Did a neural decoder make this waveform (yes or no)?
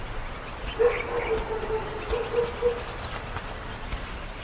no